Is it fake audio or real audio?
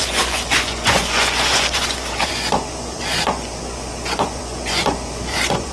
fake